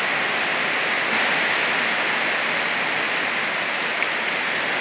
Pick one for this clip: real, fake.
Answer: real